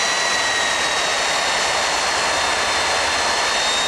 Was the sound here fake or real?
real